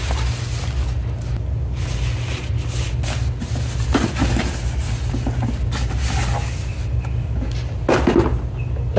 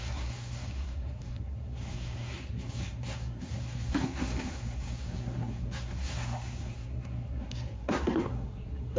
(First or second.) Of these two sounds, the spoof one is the second